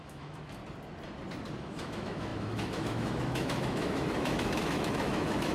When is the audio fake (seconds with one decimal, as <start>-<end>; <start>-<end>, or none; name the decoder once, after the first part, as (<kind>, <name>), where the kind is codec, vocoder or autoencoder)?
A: 0.0-0.6 (autoencoder, DAC-VAE); 1.6-5.5